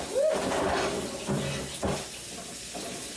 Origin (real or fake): real